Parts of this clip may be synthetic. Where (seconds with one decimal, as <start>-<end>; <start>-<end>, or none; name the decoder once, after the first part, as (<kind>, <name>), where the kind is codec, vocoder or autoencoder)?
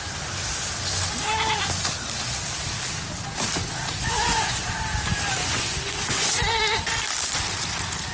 4.0-4.6 (vocoder, Vocos); 5.4-6.3